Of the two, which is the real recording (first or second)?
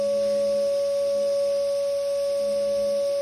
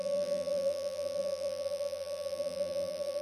first